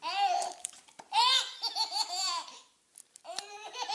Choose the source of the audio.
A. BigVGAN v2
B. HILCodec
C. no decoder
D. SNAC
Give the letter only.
C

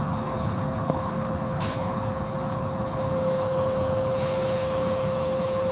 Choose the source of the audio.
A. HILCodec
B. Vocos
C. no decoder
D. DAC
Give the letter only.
A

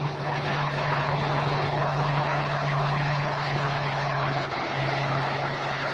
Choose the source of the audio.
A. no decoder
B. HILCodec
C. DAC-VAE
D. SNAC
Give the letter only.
B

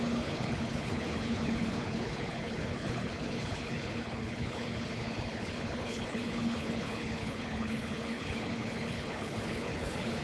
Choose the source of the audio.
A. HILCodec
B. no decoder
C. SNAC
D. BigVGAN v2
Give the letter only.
A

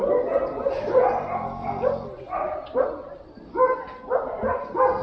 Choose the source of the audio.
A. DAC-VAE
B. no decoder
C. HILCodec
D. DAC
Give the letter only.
B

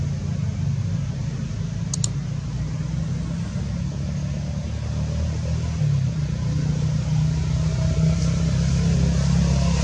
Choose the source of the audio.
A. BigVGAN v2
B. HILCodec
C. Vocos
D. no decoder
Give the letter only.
D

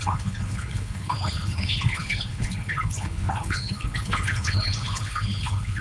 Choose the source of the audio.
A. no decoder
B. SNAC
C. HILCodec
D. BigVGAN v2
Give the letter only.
C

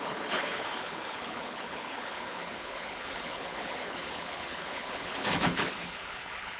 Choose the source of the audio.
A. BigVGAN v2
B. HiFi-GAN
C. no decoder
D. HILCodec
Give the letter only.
D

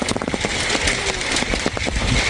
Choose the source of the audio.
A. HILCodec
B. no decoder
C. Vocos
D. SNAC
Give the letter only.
B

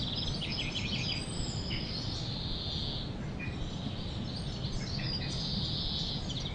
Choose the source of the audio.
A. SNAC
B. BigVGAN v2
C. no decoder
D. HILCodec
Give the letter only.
C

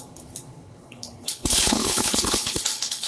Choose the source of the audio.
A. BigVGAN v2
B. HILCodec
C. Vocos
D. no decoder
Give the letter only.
B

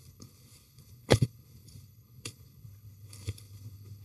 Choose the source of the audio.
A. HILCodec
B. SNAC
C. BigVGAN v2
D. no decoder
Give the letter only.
A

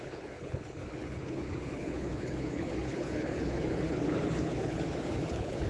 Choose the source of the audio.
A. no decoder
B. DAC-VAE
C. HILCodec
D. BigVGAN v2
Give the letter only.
C